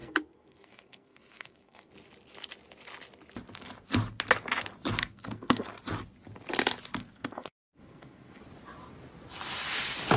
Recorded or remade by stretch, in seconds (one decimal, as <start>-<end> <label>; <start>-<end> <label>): 0.0-1.9 remade; 1.9-5.0 recorded; 5.0-5.7 remade; 5.7-7.0 recorded; 7.0-8.4 remade; 8.4-10.2 recorded